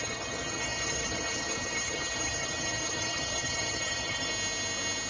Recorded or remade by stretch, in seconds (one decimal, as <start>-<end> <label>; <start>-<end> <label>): 0.0-4.3 remade; 4.3-5.1 recorded